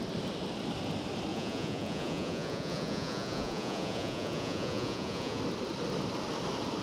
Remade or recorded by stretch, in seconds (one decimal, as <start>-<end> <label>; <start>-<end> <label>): 0.0-1.3 recorded; 1.3-5.4 remade; 5.4-6.8 recorded